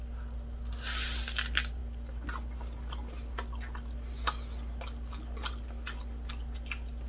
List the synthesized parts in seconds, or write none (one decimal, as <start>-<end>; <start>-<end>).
none